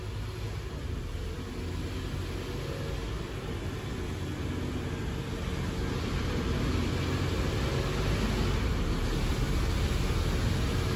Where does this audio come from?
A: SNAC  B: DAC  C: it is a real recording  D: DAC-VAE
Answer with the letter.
C